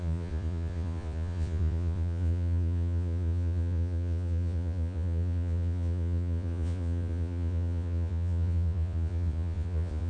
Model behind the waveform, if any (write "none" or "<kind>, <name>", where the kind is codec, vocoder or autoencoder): vocoder, Vocos